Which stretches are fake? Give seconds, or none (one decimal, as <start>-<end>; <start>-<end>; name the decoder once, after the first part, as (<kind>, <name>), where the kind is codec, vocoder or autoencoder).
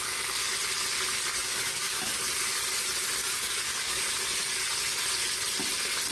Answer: 1.3-2.0 (codec, DAC); 3.2-4.0